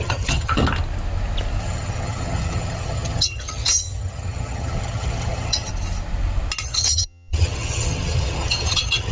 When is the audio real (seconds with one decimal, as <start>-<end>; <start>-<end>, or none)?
0.6-1.6; 5.7-6.6